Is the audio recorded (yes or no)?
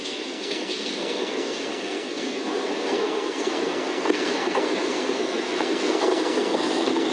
no